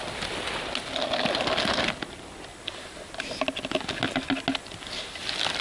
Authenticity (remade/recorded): recorded